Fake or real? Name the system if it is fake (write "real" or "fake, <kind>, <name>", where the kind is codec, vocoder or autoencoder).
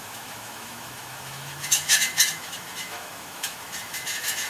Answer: fake, autoencoder, DAC-VAE